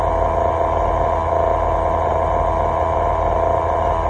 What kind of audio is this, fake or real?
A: real